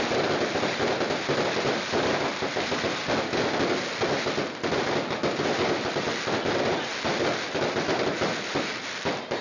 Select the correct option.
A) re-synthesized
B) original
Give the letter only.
B